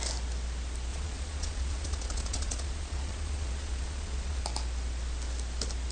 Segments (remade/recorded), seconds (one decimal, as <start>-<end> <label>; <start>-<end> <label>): 0.0-0.9 recorded; 0.9-4.4 remade; 4.4-5.9 recorded